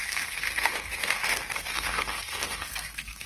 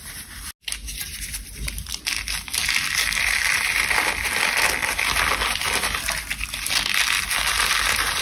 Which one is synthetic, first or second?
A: first